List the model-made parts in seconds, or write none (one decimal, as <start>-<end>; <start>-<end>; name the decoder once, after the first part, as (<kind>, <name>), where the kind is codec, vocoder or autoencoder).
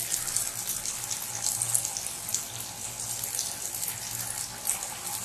none